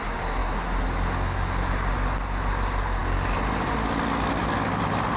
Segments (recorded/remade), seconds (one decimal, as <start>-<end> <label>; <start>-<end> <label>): 0.0-5.2 recorded